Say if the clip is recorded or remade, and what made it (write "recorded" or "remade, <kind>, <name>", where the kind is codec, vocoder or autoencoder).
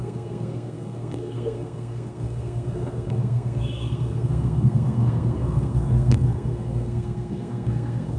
remade, codec, SNAC